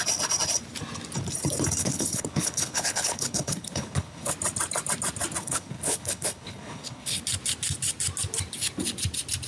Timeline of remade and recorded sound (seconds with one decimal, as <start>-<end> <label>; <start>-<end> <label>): 0.0-1.8 recorded; 1.8-4.3 remade; 4.3-5.4 recorded; 5.4-7.2 remade; 7.2-9.5 recorded